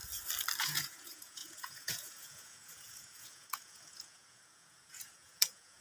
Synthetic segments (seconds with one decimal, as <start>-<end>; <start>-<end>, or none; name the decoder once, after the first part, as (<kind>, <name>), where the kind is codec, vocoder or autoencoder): 0.6-5.8 (vocoder, Vocos)